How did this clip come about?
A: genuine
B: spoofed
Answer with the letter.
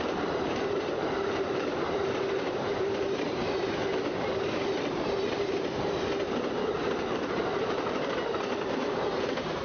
B